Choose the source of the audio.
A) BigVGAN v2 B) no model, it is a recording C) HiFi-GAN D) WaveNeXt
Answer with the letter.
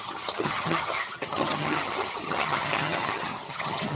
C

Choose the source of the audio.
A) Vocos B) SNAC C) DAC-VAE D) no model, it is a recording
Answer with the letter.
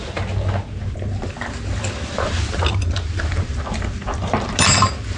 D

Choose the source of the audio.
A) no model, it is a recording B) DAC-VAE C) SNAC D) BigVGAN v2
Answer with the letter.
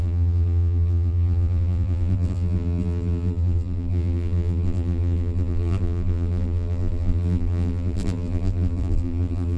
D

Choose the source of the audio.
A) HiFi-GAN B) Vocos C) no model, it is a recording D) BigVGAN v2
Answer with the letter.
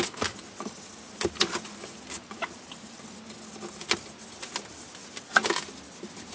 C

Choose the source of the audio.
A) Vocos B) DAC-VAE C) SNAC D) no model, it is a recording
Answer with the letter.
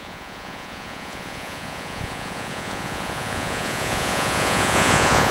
A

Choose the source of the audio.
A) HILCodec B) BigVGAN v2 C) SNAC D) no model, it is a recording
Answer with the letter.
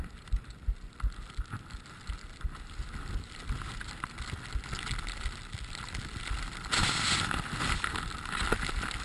D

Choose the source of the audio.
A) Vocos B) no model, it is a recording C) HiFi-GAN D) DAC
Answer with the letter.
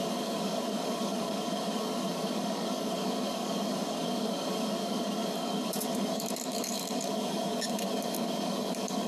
D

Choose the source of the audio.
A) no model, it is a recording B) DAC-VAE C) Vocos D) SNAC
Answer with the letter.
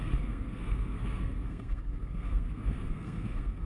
D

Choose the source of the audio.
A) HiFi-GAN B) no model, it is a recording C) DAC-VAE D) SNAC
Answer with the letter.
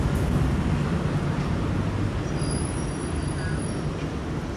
B